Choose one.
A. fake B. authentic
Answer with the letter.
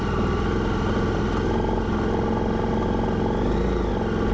B